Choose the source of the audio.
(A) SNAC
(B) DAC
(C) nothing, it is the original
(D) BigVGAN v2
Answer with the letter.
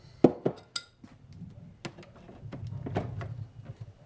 C